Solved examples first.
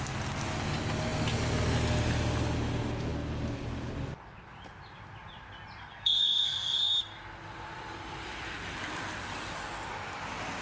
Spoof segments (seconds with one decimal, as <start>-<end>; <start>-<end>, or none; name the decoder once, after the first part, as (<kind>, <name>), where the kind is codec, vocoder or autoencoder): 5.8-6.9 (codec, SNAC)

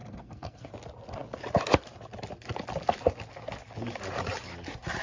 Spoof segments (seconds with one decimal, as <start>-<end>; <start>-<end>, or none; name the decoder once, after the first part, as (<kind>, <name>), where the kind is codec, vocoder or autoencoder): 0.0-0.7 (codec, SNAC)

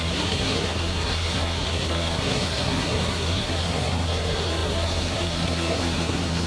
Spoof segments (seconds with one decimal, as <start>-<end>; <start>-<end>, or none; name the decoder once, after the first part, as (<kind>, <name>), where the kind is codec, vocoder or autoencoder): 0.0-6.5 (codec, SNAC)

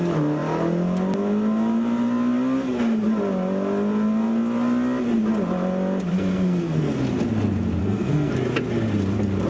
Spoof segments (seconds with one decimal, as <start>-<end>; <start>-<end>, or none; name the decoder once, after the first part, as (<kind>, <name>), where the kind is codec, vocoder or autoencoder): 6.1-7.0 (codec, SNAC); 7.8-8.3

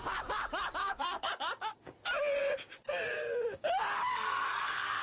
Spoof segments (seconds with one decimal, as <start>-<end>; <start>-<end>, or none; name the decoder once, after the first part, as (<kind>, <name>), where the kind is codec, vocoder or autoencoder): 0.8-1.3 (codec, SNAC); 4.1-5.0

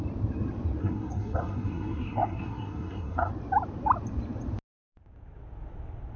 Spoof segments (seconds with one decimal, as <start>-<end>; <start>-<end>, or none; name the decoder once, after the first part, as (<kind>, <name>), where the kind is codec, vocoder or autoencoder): 0.8-3.3 (codec, SNAC)